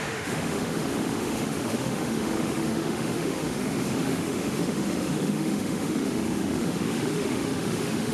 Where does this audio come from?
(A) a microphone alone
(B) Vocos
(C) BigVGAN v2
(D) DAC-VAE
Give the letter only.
D